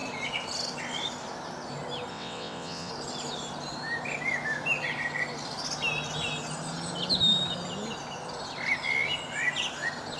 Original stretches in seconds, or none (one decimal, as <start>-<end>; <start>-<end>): 0.0-2.1; 2.9-10.2